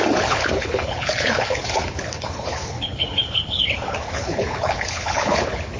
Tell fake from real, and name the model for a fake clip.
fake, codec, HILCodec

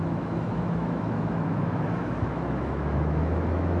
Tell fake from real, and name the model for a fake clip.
fake, autoencoder, DAC-VAE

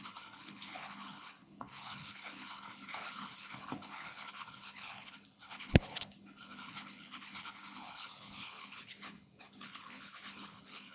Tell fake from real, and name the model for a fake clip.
fake, codec, HILCodec